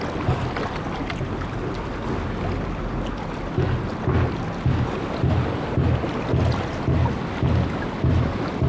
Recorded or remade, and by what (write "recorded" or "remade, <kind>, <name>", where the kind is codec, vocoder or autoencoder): recorded